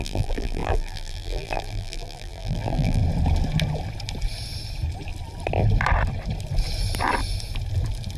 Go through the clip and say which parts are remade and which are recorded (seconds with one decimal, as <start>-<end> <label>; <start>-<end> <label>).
0.0-3.0 remade; 3.0-8.2 recorded